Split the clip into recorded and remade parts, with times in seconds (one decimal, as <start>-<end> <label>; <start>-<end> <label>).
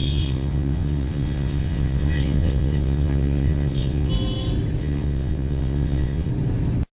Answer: 0.0-4.1 remade; 4.1-4.8 recorded; 4.8-6.3 remade; 6.3-6.9 recorded